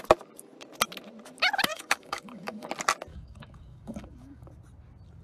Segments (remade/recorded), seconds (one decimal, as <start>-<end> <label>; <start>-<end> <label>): 0.0-1.7 recorded; 1.7-2.7 remade; 2.7-3.1 recorded; 3.1-4.5 remade; 4.5-5.2 recorded